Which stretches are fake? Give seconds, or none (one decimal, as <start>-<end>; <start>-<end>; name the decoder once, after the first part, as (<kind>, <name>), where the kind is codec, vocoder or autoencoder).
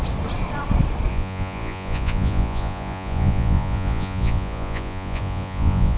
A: 1.1-6.0 (vocoder, Vocos)